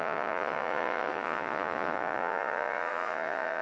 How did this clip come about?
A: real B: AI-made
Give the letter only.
B